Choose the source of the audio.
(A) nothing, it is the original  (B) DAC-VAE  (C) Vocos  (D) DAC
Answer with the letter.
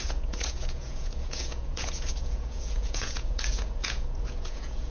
C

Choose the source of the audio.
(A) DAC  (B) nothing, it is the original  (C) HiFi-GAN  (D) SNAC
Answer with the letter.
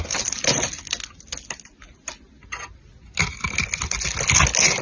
B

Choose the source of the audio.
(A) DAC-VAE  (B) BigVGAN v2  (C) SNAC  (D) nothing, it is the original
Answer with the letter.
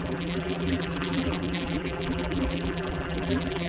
B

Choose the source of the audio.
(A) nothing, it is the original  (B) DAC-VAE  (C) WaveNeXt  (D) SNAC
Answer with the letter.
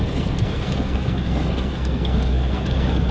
D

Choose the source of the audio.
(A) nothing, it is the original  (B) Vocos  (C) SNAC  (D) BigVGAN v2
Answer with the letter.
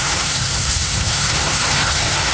C